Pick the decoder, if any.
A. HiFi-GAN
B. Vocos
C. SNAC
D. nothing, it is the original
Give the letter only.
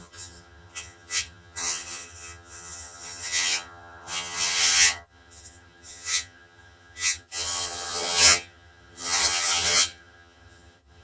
A